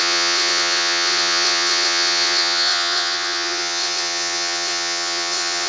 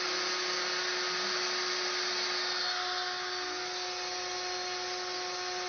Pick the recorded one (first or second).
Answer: second